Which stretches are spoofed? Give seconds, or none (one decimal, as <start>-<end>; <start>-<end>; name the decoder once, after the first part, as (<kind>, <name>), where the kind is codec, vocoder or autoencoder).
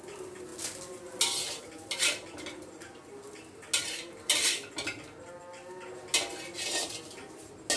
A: none